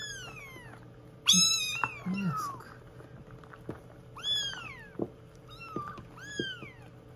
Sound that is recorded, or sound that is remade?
recorded